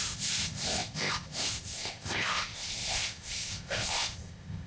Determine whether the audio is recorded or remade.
remade